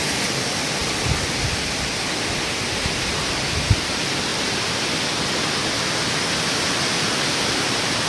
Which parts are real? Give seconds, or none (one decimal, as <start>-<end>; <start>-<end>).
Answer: 0.8-1.9; 4.3-7.4